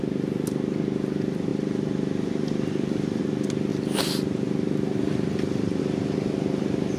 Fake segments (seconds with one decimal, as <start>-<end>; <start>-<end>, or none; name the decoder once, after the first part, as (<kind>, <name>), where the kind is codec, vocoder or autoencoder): 1.5-3.2 (vocoder, BigVGAN v2)